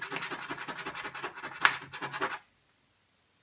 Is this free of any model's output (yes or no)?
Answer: yes